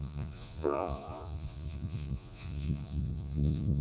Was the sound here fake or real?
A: fake